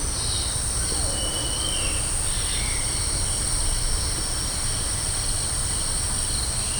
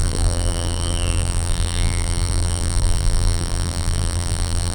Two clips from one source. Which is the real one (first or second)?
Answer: first